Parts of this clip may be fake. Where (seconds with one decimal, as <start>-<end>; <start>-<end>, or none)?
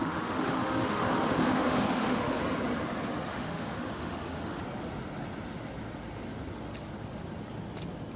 0.0-2.4; 3.3-4.6